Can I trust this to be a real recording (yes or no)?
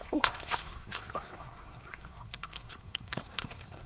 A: no